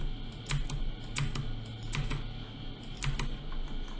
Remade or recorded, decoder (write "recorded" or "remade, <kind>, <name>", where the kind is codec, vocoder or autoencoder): recorded